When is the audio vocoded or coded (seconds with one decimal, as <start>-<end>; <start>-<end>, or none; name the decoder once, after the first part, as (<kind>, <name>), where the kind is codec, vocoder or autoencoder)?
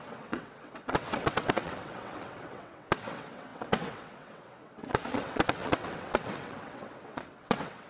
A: 0.0-7.9 (vocoder, WaveNeXt)